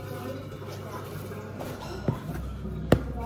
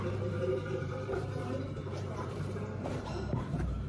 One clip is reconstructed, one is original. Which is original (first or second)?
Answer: first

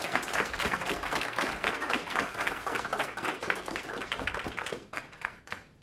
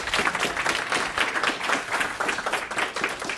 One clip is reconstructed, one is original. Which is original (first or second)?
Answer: second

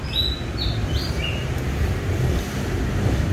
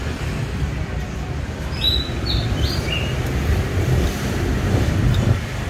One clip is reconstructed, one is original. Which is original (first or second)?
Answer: first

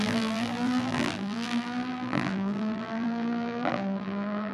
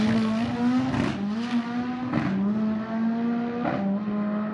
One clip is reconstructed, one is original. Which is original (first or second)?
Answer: second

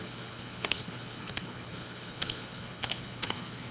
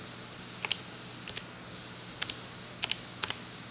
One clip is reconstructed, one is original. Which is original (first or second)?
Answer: second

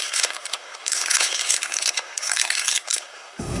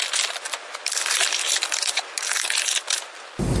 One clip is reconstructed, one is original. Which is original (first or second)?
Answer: second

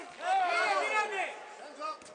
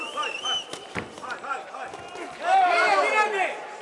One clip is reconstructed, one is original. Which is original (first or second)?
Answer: first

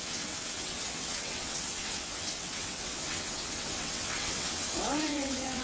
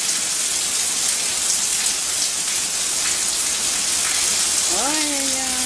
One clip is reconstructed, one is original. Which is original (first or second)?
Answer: second